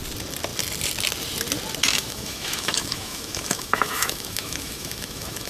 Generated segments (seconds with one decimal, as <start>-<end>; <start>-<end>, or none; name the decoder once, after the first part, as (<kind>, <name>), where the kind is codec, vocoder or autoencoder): 1.9-5.5 (autoencoder, DAC-VAE)